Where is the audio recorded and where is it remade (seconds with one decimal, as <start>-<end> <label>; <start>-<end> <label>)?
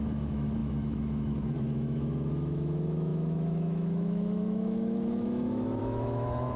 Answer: 0.0-6.6 remade